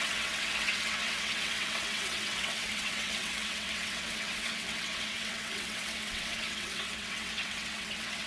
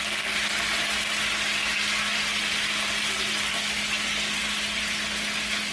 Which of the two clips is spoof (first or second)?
first